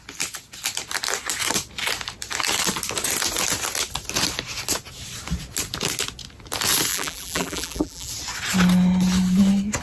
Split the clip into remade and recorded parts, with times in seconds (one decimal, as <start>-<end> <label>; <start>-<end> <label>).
0.0-6.9 recorded; 6.9-8.1 remade; 8.1-9.8 recorded